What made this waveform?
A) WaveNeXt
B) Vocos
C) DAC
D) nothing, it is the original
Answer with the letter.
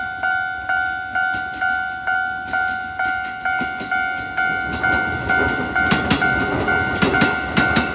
D